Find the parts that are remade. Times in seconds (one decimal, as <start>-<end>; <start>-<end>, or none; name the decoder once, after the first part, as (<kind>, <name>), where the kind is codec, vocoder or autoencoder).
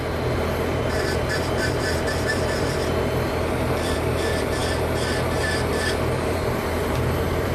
0.0-4.6 (vocoder, BigVGAN v2); 5.7-7.5